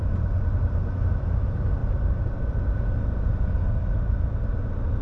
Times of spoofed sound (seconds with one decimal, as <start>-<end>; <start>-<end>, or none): 0.0-1.8